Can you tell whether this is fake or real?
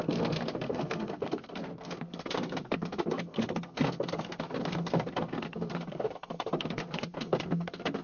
fake